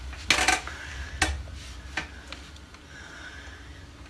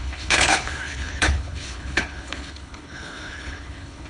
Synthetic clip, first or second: second